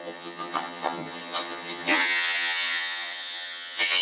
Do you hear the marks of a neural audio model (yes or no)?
yes